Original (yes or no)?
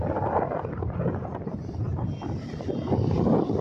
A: yes